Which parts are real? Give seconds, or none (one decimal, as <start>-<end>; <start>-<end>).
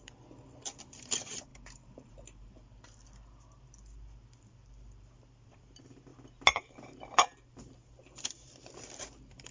1.5-2.1; 6.1-7.0